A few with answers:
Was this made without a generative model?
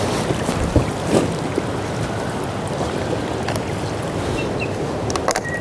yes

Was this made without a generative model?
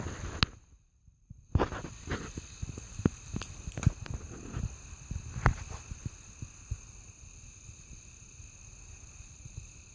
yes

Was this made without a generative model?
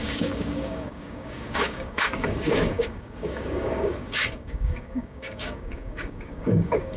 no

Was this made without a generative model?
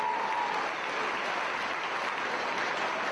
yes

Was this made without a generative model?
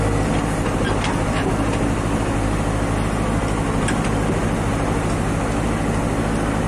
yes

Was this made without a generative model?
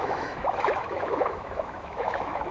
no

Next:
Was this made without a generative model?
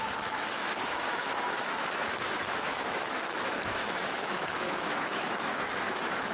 no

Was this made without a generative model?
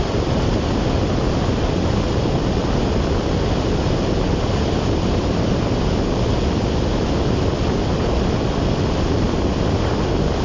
yes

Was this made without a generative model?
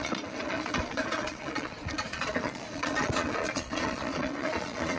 no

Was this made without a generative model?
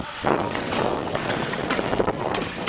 no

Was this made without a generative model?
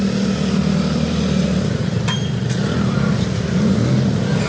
yes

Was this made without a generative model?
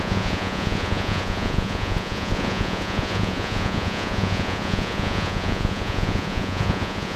no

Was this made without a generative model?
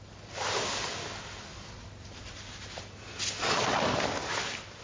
yes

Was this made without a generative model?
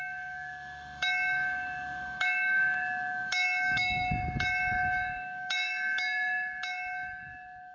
no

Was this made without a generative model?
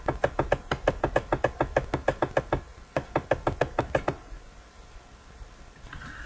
yes